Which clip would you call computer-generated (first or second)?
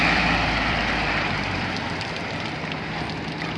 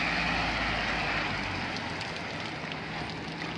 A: first